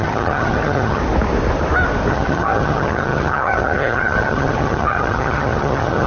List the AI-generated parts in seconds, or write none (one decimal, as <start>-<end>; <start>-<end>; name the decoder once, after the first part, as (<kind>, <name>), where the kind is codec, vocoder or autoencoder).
0.0-1.0 (vocoder, HiFi-GAN); 2.1-6.1